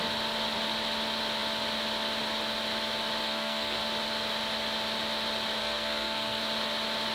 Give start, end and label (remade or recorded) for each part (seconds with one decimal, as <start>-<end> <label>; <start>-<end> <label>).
0.0-3.2 recorded; 3.2-3.8 remade; 3.8-5.6 recorded; 5.6-6.4 remade; 6.4-7.1 recorded